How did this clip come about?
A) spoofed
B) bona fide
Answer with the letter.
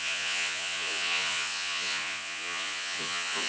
A